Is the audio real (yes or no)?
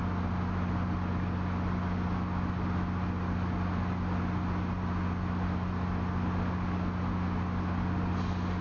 yes